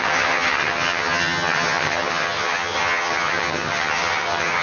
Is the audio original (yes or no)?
no